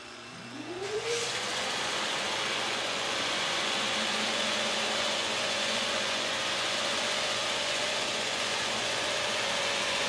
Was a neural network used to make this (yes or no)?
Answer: yes